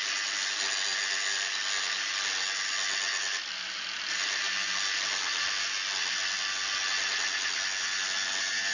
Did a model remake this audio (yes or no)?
no